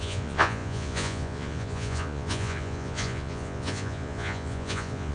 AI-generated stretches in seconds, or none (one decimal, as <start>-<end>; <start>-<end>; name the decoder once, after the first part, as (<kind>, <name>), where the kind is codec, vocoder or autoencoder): 0.0-5.1 (vocoder, Vocos)